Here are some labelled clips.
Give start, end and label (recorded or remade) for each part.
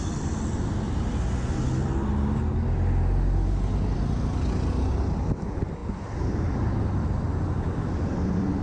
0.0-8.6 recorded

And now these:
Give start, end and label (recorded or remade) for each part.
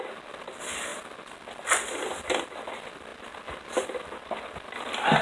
0.0-5.2 recorded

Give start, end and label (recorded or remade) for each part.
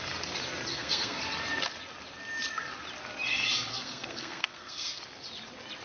0.0-0.7 recorded; 0.7-1.2 remade; 1.2-3.7 recorded; 3.7-5.0 remade; 5.0-5.8 recorded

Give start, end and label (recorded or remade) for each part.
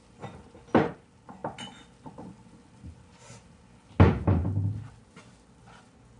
0.0-6.2 recorded